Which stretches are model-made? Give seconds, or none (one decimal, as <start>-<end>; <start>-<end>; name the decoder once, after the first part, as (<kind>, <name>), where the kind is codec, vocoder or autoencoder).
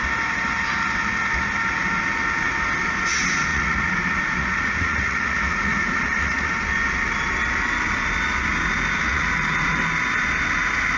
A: 3.5-6.5 (vocoder, Vocos); 9.0-9.8